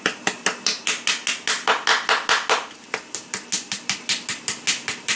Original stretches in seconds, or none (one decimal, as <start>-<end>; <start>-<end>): 0.0-5.2